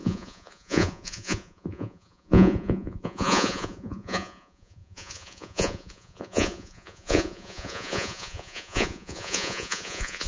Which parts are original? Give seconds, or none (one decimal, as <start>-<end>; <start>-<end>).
none